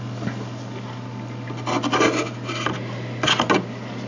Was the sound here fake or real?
real